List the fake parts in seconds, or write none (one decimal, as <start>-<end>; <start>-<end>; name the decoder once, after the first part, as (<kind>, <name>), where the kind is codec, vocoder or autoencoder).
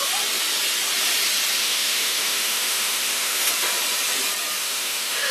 1.6-3.5 (autoencoder, DAC-VAE); 4.6-5.3